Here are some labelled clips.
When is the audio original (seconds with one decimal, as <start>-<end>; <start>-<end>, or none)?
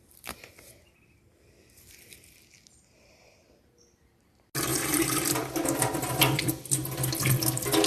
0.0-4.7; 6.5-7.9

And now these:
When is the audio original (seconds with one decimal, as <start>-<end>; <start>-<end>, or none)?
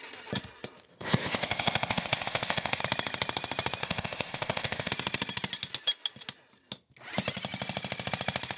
0.0-0.9; 2.8-3.8; 4.9-8.6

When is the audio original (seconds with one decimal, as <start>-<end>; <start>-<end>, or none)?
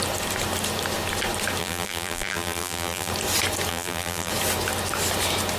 0.0-1.6; 3.1-3.7; 4.3-5.6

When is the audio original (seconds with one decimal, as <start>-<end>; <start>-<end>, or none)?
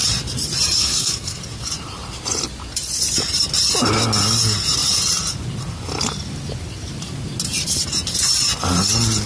0.0-0.8; 1.4-9.3